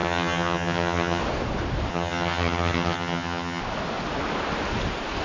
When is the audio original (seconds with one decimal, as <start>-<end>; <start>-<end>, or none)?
1.2-1.9; 3.6-5.2

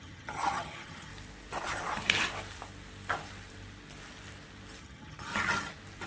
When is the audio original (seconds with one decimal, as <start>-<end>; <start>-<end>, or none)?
1.1-4.8; 5.3-6.1

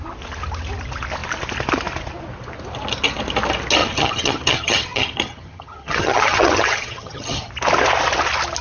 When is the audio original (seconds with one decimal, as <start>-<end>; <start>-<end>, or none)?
0.0-3.8; 7.5-8.6

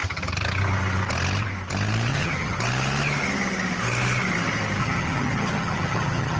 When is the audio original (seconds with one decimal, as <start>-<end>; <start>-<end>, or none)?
0.0-2.1; 2.6-4.8

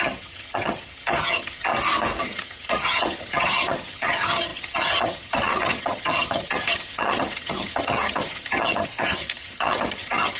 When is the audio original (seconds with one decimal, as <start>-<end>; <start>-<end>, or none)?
1.7-2.2